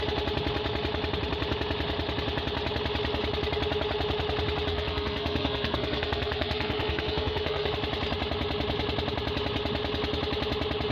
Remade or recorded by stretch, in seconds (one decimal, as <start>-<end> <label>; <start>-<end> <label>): 0.0-4.7 recorded; 4.7-7.7 remade; 7.7-10.9 recorded